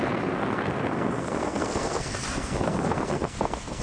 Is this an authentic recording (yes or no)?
no